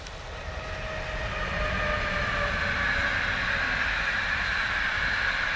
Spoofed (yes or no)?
no